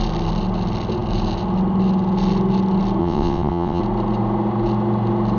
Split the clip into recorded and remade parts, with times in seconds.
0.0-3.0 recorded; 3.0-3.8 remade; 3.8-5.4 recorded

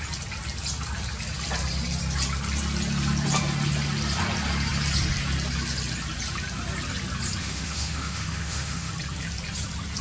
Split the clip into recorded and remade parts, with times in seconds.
0.0-7.4 recorded; 7.4-8.9 remade; 8.9-10.0 recorded

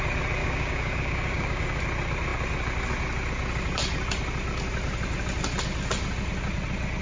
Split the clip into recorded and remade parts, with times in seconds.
0.0-0.4 recorded; 0.4-1.8 remade; 1.8-7.0 recorded

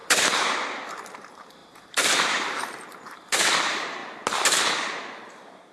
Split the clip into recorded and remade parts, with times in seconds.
0.0-0.9 recorded; 0.9-4.0 remade; 4.0-5.0 recorded; 5.0-5.7 remade

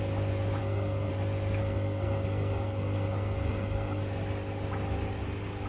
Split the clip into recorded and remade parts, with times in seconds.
0.0-0.6 recorded; 0.6-1.1 remade; 1.1-1.6 recorded; 1.6-4.0 remade; 4.0-5.7 recorded